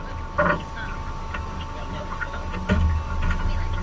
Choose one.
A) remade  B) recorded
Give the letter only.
B